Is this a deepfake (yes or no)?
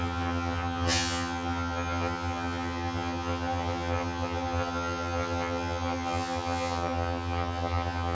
yes